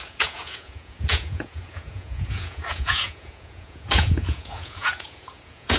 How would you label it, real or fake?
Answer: fake